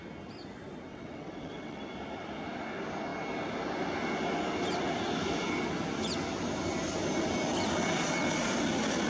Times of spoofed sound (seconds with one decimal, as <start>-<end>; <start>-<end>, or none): 0.9-1.8

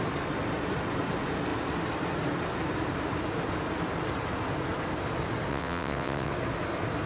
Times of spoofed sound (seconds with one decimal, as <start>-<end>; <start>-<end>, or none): 5.5-6.3

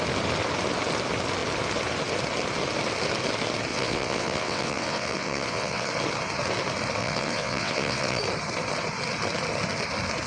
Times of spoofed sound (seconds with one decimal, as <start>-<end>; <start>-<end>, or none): 3.7-5.9; 7.0-8.2

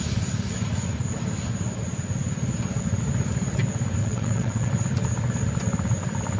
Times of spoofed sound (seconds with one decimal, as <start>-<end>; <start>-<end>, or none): 4.0-4.7

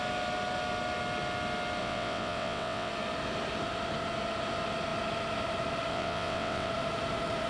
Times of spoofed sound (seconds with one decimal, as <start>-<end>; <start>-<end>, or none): 1.8-2.9; 5.9-6.7

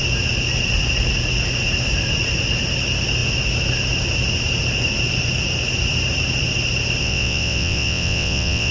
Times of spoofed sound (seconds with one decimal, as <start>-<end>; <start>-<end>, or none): 7.0-8.7